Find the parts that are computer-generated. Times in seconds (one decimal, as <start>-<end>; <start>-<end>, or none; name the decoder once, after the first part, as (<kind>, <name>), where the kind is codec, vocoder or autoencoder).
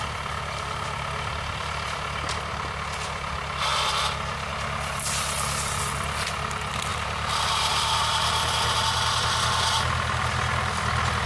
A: 6.9-7.9 (vocoder, BigVGAN v2)